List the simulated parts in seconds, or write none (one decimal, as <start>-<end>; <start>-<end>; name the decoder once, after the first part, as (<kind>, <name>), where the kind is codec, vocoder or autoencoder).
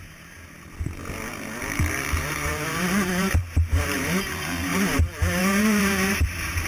0.0-1.0 (vocoder, BigVGAN v2); 1.6-6.7